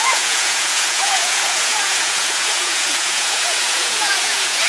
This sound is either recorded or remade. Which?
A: remade